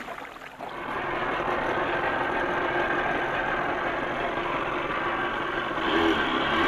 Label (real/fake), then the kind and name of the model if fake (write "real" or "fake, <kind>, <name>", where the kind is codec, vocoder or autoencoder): real